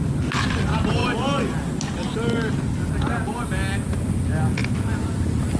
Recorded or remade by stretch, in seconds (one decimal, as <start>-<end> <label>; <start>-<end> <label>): 0.0-5.6 recorded

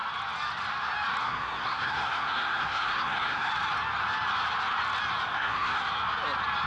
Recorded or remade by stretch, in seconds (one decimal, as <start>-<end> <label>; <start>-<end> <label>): 0.0-1.2 recorded; 1.2-3.5 remade; 3.5-5.3 recorded; 5.3-5.8 remade; 5.8-6.7 recorded

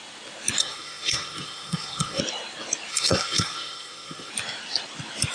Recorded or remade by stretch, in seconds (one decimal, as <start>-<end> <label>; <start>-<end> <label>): 0.0-0.6 recorded; 0.6-2.2 remade; 2.2-2.9 recorded; 2.9-4.3 remade; 4.3-5.3 recorded

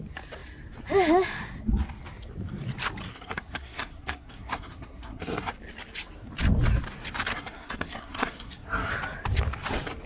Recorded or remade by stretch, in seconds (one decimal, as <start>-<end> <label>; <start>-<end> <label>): 0.0-3.1 recorded; 3.1-5.5 remade; 5.5-7.3 recorded; 7.3-8.9 remade; 8.9-10.1 recorded

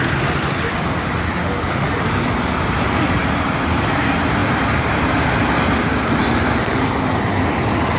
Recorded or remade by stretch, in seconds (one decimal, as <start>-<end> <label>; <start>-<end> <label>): 0.0-8.0 recorded

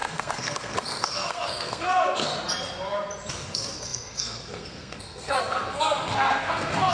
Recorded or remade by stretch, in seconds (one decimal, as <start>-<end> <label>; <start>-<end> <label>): 0.0-2.3 remade; 2.3-3.3 recorded; 3.3-6.9 remade

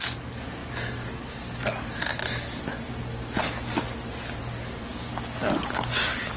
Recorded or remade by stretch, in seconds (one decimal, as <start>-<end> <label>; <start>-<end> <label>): 0.0-6.4 recorded